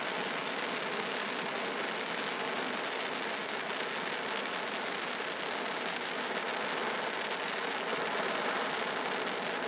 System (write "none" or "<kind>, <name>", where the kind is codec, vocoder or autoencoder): none